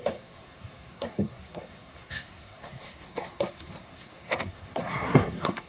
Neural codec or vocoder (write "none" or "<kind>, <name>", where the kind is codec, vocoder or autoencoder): codec, SNAC